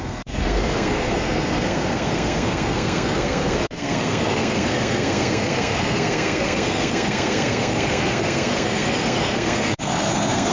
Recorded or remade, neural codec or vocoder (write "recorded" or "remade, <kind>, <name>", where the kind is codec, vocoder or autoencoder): remade, codec, SNAC